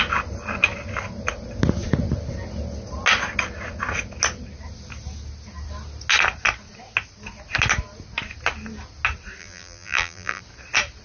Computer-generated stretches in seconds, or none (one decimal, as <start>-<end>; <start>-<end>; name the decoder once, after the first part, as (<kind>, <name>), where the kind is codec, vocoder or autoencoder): 9.4-10.4 (vocoder, BigVGAN v2)